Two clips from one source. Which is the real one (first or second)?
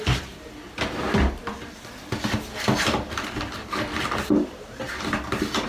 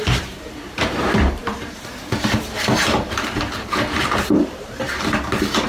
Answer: first